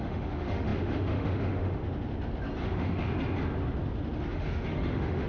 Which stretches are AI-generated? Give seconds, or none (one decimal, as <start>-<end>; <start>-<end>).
0.0-1.8; 2.6-3.1; 4.3-5.3